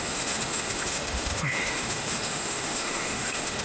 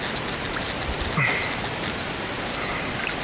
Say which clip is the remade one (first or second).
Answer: first